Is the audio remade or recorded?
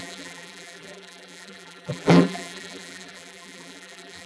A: remade